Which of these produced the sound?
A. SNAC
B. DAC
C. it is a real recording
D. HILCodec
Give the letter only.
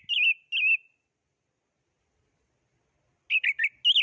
C